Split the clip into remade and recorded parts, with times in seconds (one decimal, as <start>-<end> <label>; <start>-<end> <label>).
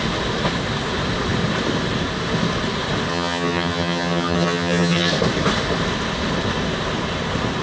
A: 0.0-3.1 recorded; 3.1-5.1 remade; 5.1-7.6 recorded